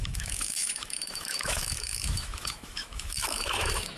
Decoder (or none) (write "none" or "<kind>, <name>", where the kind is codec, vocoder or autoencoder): autoencoder, DAC-VAE